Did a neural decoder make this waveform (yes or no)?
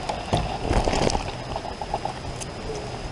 no